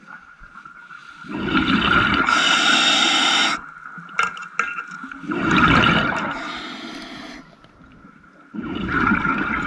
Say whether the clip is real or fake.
real